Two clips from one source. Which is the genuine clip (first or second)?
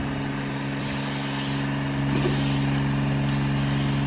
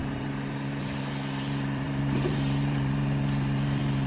first